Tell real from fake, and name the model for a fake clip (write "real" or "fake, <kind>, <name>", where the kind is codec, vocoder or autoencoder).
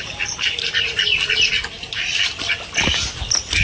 real